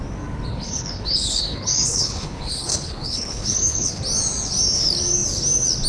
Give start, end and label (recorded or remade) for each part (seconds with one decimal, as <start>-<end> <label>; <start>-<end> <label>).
0.0-0.5 recorded; 0.5-4.0 remade; 4.0-5.9 recorded